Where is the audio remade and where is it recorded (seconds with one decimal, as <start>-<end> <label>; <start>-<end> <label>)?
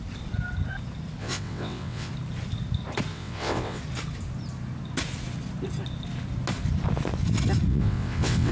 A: 0.0-1.2 recorded; 1.2-2.1 remade; 2.1-3.1 recorded; 3.1-3.8 remade; 3.8-7.7 recorded; 7.7-8.5 remade